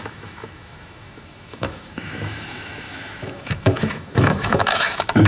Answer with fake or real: fake